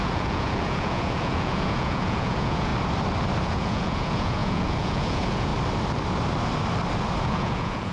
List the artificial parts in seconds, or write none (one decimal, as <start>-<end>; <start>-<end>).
0.0-2.7; 3.4-5.5; 7.2-7.9